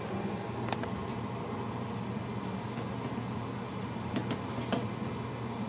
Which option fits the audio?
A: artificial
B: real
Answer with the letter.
B